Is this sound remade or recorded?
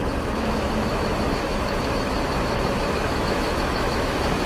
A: remade